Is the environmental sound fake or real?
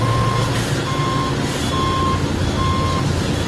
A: real